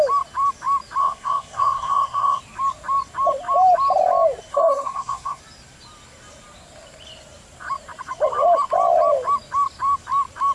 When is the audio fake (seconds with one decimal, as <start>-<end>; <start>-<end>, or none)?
1.0-2.4; 4.5-5.4